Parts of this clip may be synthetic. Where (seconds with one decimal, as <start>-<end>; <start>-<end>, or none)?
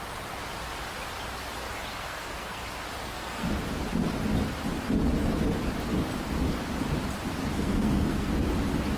1.9-2.6; 3.0-3.5; 7.4-8.3